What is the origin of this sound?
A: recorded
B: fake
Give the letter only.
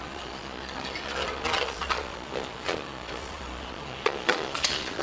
B